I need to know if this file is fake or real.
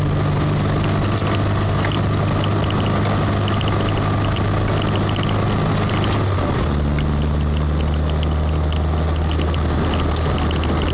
real